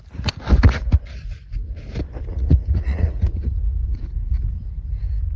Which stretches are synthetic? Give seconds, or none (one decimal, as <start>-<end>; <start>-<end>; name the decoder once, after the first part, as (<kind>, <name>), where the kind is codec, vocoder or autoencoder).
2.3-4.1 (vocoder, Vocos)